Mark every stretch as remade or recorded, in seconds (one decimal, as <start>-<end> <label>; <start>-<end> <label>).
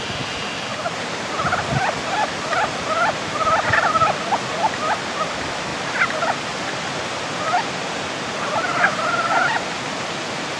0.0-0.7 recorded; 0.7-1.6 remade; 1.6-8.7 recorded; 8.7-9.3 remade; 9.3-10.6 recorded